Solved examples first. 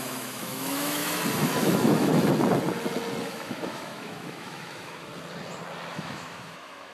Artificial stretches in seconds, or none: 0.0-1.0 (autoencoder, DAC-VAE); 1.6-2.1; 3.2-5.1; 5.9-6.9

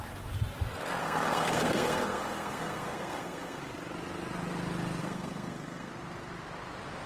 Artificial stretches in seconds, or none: 1.0-3.6 (codec, SNAC); 5.0-5.9

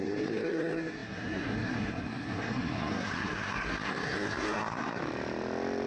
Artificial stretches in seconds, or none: 0.0-5.0 (codec, SNAC)

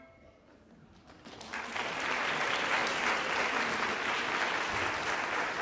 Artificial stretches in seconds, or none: none

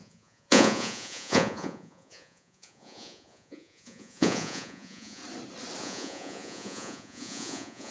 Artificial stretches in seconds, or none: 0.0-5.2 (vocoder, Vocos); 5.8-7.9

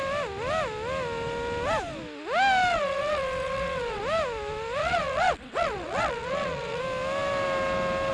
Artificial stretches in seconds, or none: 2.7-4.0 (vocoder, WaveNeXt); 4.8-6.8